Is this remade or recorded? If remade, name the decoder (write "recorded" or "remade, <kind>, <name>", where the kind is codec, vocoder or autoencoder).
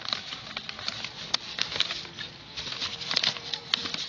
recorded